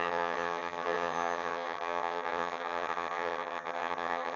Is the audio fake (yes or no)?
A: yes